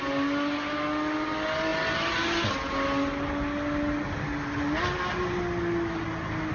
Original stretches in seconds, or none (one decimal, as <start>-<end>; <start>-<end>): 0.0-6.5

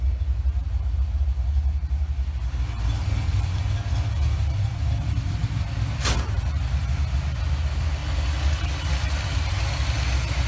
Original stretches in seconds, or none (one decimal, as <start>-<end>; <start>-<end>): 0.0-10.5

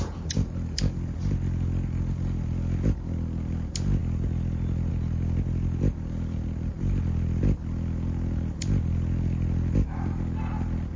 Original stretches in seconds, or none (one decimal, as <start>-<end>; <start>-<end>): 0.0-11.0

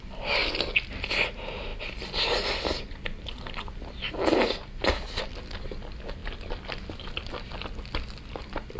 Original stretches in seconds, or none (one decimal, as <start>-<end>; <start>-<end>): 0.0-8.8

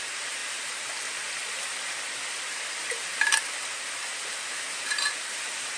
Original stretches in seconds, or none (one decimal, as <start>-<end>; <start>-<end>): 0.0-5.8